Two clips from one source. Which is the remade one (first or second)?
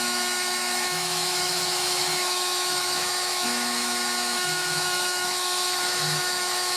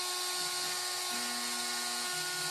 first